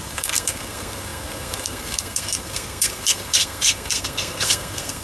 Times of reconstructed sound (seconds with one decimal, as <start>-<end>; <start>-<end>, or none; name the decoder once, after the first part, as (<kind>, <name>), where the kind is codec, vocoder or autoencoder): 0.0-5.0 (codec, SNAC)

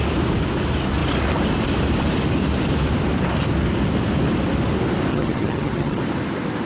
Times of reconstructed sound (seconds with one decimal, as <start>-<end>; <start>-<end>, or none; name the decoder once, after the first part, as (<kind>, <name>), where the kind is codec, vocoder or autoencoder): 5.1-6.0 (vocoder, HiFi-GAN)

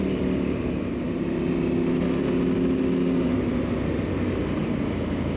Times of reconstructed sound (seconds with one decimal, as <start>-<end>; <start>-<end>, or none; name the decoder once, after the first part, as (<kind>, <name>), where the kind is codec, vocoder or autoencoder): 4.6-5.4 (vocoder, BigVGAN v2)